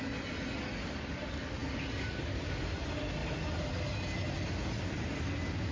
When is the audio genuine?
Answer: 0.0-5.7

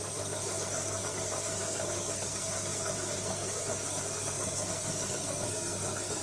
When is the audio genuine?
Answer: none

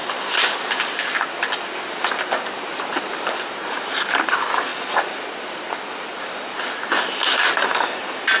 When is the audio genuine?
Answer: none

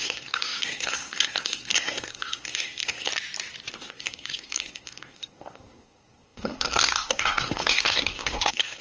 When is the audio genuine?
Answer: 3.1-3.7

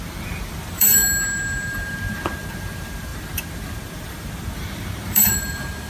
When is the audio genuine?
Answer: 1.0-2.0